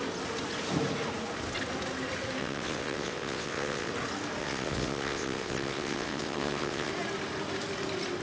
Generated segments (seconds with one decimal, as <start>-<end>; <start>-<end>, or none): 2.4-3.9; 4.4-6.9